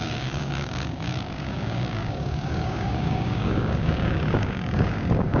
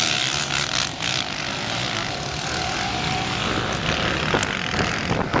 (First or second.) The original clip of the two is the second